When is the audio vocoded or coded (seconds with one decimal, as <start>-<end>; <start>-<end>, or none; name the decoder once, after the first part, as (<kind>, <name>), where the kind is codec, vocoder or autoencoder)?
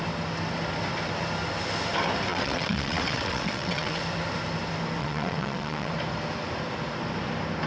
2.3-4.0 (vocoder, WaveNeXt); 5.0-5.9